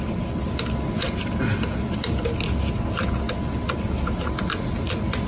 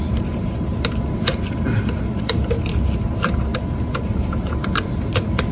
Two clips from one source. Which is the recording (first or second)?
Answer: first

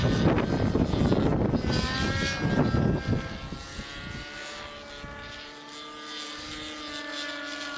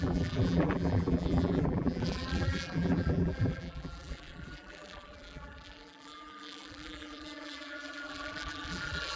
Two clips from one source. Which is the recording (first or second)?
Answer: first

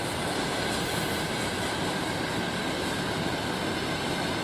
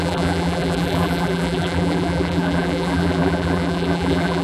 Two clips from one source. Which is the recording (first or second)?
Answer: first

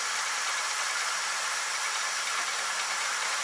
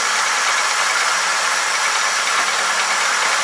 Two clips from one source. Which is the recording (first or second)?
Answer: second